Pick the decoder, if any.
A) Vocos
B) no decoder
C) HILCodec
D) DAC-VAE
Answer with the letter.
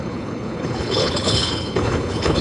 C